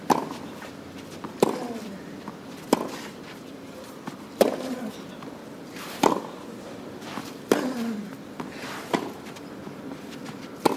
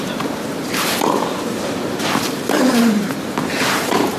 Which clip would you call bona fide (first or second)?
first